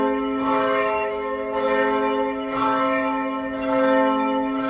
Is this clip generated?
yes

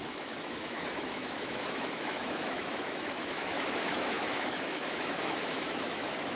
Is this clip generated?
yes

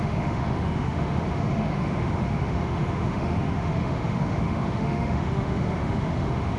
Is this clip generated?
yes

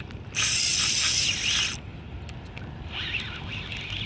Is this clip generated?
no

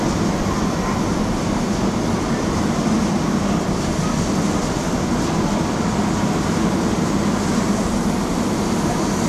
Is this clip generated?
no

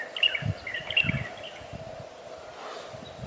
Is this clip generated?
no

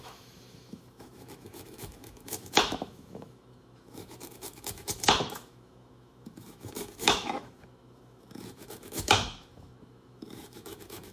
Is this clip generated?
yes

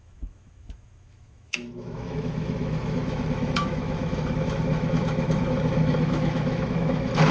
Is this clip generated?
yes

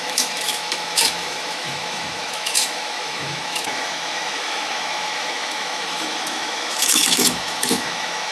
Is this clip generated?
yes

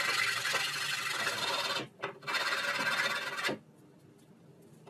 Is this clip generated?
no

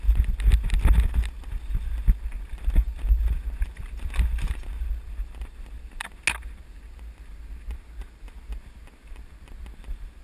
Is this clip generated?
no